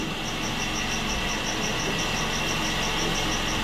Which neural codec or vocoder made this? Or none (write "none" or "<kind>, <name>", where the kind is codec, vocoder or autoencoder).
none